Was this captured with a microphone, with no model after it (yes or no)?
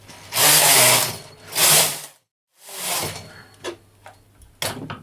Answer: yes